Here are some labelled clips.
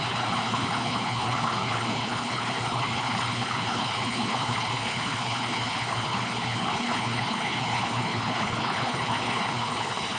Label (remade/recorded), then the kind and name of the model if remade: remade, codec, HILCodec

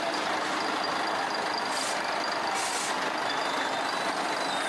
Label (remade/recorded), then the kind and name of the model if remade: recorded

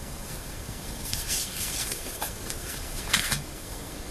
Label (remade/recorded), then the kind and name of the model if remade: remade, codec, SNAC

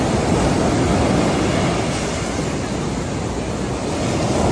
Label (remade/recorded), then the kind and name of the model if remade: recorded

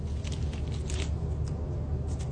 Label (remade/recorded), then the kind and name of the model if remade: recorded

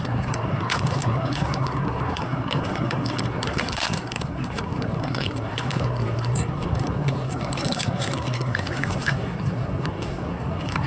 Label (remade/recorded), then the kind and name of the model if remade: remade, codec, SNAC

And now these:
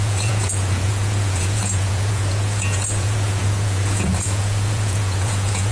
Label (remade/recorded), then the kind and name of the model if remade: remade, vocoder, Vocos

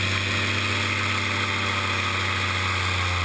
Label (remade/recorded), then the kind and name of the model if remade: recorded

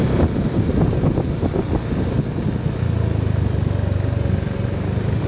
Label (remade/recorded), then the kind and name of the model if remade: recorded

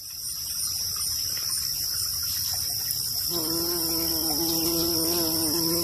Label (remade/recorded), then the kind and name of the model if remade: recorded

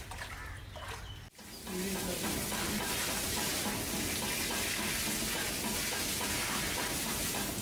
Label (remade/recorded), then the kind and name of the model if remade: recorded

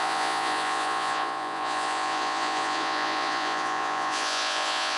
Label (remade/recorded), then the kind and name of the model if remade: remade, vocoder, Vocos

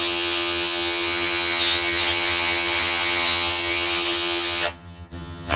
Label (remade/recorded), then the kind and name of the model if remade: remade, vocoder, HiFi-GAN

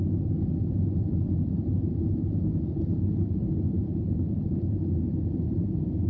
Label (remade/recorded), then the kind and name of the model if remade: recorded